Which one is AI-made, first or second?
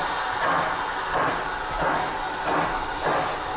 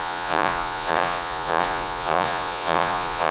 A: second